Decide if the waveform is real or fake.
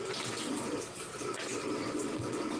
fake